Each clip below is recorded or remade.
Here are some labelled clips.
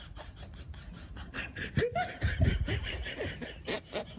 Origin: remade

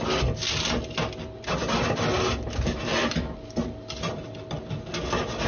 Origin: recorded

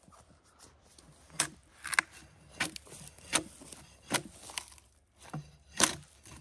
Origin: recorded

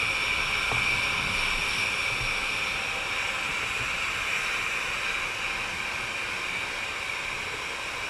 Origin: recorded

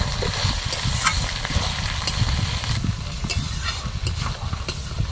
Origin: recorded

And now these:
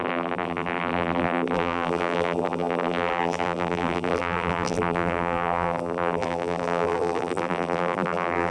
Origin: remade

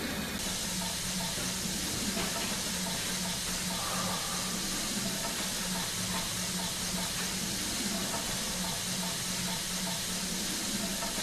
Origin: recorded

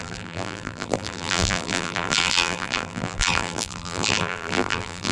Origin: remade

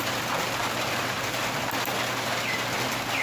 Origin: remade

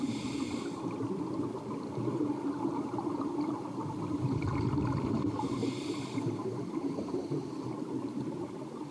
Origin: remade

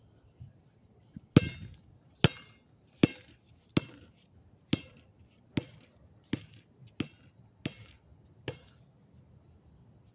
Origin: recorded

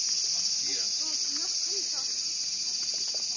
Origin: recorded